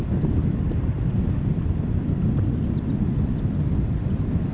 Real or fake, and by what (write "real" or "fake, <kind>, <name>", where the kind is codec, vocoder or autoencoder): real